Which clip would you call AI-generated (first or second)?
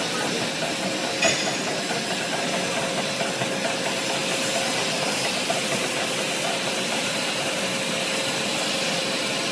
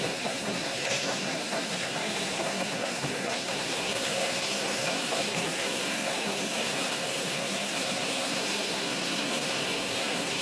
second